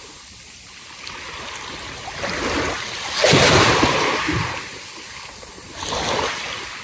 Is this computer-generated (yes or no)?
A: no